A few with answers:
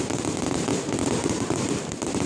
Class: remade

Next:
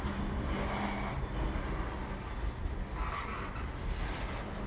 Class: recorded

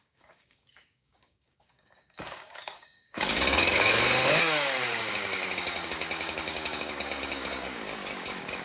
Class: remade